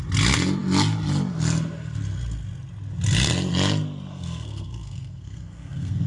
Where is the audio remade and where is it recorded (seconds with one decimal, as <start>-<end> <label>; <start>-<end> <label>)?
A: 0.0-4.1 recorded; 4.1-6.1 remade